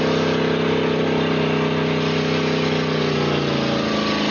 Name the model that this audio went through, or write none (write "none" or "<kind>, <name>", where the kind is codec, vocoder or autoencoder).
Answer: none